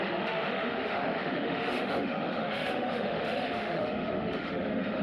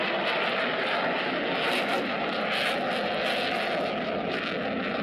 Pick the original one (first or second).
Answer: second